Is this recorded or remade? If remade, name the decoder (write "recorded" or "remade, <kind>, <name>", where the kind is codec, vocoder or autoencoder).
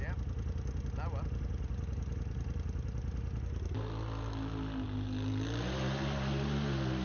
recorded